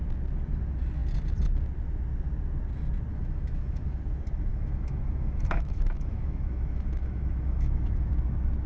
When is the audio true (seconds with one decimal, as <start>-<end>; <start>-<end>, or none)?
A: 0.0-3.1; 4.0-4.5; 8.1-8.7